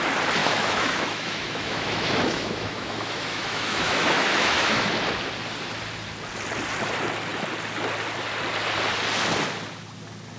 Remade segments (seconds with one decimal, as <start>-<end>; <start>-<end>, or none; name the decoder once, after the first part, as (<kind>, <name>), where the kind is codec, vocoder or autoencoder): 0.4-4.9 (autoencoder, DAC-VAE)